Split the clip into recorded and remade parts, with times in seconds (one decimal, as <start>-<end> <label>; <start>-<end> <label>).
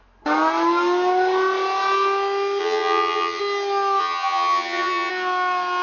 0.0-2.6 recorded; 2.6-3.4 remade; 3.4-4.0 recorded; 4.0-5.1 remade; 5.1-5.8 recorded